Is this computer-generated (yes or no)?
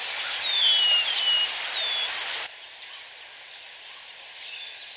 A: no